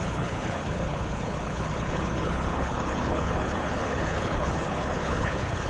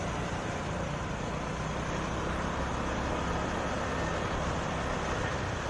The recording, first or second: second